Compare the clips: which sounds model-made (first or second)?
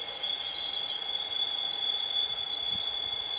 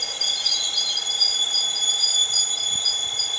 first